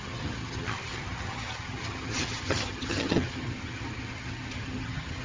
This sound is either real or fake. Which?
fake